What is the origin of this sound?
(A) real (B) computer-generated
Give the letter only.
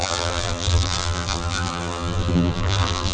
B